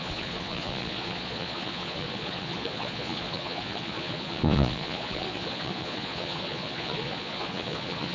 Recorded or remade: remade